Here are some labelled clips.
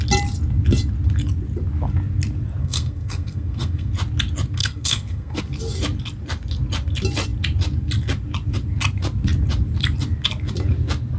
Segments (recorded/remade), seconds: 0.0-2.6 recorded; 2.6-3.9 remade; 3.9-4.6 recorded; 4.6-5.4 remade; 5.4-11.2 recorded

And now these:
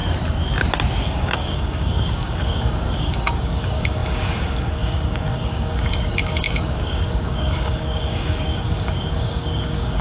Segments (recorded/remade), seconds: 0.0-1.0 recorded; 1.0-10.0 remade